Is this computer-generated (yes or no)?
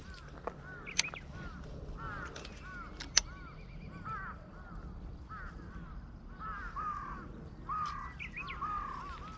no